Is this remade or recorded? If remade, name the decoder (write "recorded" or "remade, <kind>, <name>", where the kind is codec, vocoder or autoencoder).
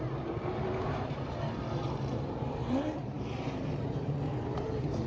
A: remade, vocoder, BigVGAN v2